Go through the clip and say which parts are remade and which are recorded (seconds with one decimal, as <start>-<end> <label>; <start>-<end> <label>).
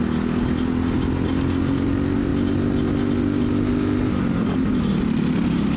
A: 0.0-5.8 recorded